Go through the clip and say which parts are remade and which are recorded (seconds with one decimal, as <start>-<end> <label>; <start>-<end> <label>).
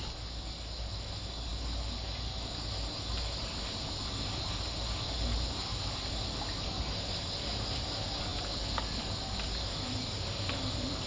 0.0-11.1 recorded